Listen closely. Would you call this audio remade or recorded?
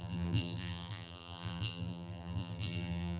remade